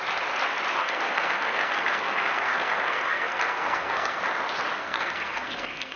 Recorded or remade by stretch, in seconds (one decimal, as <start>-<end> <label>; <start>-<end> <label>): 0.0-0.8 recorded; 0.8-4.2 remade; 4.2-4.8 recorded; 4.8-6.0 remade